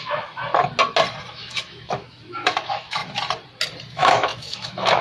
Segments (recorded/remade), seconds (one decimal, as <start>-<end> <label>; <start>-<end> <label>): 0.0-0.4 remade; 0.4-1.3 recorded; 1.3-3.0 remade; 3.0-3.9 recorded; 3.9-5.0 remade